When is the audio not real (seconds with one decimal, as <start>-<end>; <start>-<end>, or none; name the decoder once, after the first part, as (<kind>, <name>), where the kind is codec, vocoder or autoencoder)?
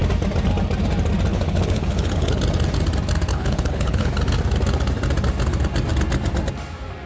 1.3-2.4 (codec, HILCodec); 3.3-4.1